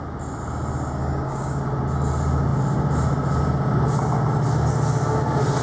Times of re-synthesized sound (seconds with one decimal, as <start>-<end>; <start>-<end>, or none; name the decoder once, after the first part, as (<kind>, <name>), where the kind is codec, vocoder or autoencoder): 1.0-1.6 (codec, DAC)